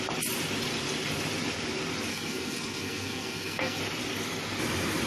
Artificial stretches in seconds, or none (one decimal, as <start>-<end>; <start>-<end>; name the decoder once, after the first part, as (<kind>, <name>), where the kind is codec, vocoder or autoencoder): 2.1-3.8 (codec, SNAC)